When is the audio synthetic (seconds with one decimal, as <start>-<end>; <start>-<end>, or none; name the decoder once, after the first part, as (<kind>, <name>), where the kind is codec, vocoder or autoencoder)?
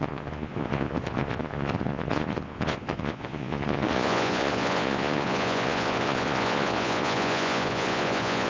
0.0-8.5 (vocoder, Vocos)